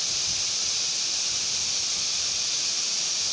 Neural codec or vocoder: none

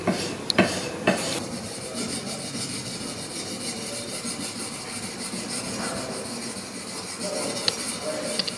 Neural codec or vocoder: none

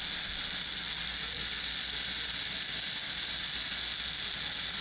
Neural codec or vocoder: none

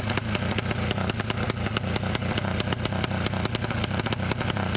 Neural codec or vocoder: none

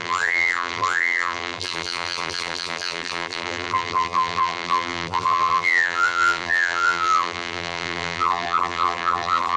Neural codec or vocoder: vocoder, BigVGAN v2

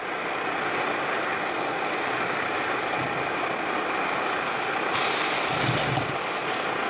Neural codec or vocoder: none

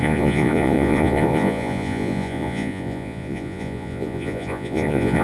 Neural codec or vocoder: vocoder, Vocos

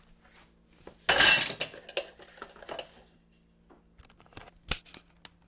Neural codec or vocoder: none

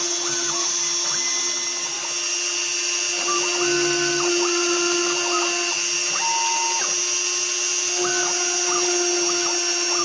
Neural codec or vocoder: none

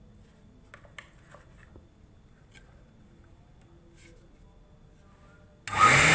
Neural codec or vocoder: none